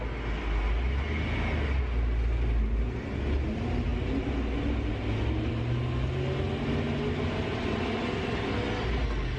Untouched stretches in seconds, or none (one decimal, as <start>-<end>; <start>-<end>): 0.0-9.4